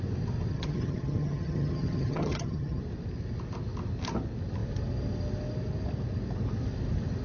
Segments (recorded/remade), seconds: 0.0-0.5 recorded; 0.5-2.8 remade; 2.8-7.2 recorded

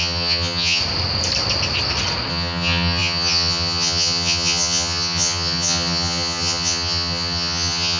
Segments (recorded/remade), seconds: 0.0-0.8 remade; 0.8-2.3 recorded; 2.3-8.0 remade